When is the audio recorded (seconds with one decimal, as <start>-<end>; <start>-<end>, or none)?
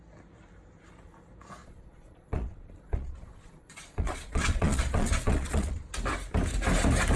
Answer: 0.0-1.6; 5.9-7.2